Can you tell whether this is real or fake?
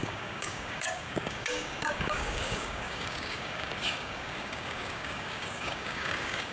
fake